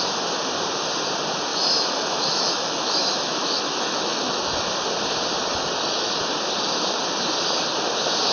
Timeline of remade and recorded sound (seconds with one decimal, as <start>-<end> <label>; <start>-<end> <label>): 0.0-1.5 recorded; 1.5-4.7 remade; 4.7-5.4 recorded; 5.4-6.2 remade; 6.2-8.3 recorded